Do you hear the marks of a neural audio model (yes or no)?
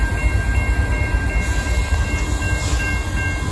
no